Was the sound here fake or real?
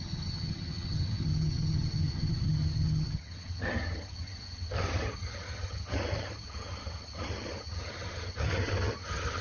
fake